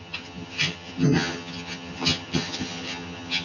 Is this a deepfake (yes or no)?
yes